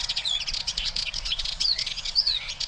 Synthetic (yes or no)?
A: yes